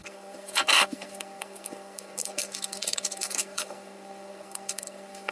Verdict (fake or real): fake